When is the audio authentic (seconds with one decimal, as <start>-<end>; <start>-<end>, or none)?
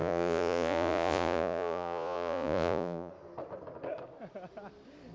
3.1-5.1